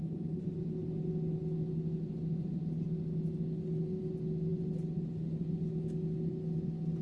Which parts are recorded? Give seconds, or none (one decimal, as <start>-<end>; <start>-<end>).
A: 0.0-7.0